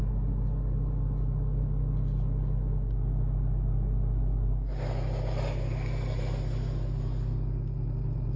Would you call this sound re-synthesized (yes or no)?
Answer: no